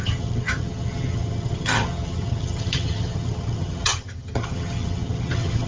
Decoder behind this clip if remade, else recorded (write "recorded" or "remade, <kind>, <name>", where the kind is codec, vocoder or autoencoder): remade, vocoder, HiFi-GAN